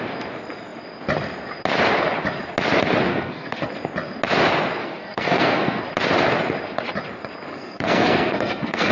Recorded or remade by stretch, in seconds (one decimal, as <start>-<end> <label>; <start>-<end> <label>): 0.0-3.1 recorded; 3.1-3.7 remade; 3.7-4.8 recorded; 4.8-5.8 remade; 5.8-7.5 recorded; 7.5-8.9 remade